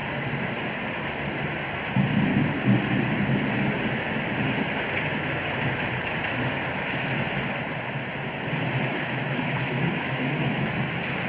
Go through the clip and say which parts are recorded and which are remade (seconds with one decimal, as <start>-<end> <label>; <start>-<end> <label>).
0.0-8.9 recorded; 8.9-10.7 remade; 10.7-11.3 recorded